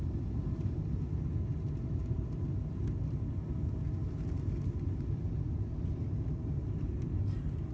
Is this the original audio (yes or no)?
yes